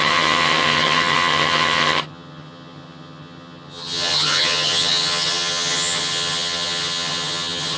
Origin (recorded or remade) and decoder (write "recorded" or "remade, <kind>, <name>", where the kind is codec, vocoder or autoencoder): remade, vocoder, HiFi-GAN